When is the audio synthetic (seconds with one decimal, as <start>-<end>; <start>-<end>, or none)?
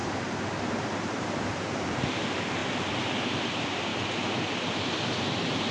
0.7-2.6; 3.4-3.9; 4.8-5.7